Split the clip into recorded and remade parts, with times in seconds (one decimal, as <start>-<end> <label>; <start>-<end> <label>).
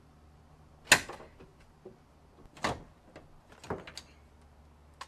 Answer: 0.0-5.1 recorded